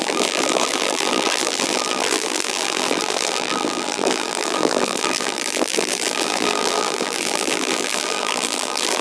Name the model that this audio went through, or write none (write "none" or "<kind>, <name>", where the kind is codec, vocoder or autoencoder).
vocoder, BigVGAN v2